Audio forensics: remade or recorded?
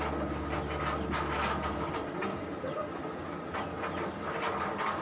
recorded